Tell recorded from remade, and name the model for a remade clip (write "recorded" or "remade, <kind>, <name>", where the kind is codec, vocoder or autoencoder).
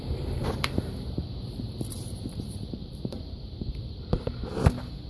remade, vocoder, BigVGAN v2